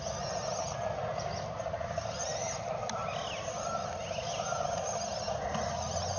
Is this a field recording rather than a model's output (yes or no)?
yes